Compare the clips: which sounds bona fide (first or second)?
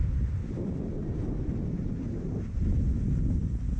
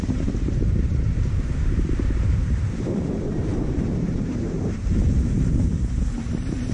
first